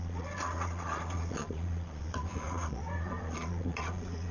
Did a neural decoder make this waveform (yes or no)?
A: yes